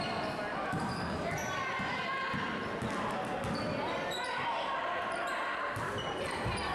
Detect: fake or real real